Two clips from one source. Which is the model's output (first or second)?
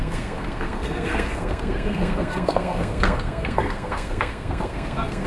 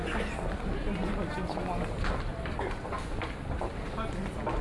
first